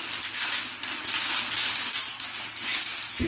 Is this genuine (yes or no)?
yes